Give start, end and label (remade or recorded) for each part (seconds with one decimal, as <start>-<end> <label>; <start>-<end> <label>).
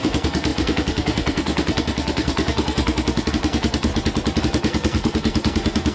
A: 0.0-3.9 remade; 3.9-4.4 recorded; 4.4-5.9 remade